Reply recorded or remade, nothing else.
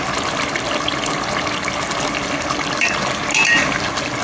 recorded